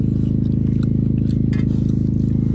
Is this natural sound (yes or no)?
yes